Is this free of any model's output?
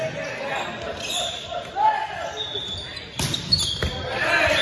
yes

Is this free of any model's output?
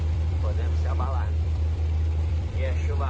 no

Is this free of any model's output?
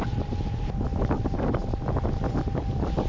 no